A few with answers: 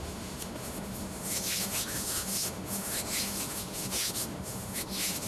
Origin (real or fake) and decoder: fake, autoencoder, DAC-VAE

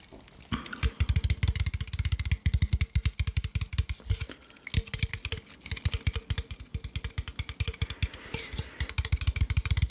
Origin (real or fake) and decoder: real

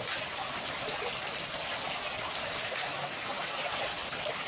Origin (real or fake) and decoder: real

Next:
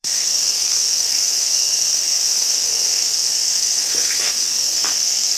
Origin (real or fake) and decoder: fake, codec, SNAC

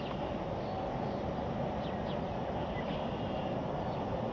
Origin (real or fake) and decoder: real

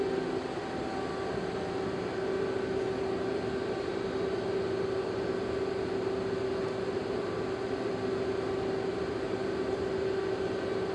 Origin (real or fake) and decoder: real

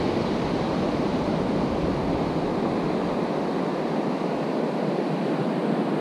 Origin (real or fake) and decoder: real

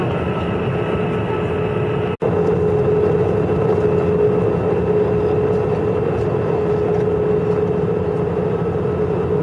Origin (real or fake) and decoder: real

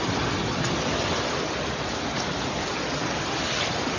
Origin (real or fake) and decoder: real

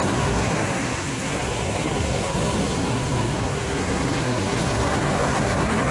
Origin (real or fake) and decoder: fake, codec, SNAC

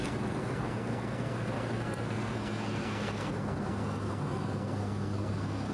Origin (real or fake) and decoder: fake, codec, SNAC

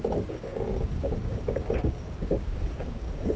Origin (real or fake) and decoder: fake, codec, DAC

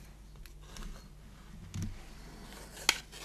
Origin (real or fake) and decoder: real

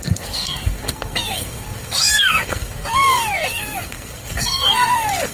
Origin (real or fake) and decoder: fake, codec, SNAC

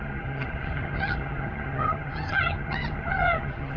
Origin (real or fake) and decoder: fake, vocoder, HiFi-GAN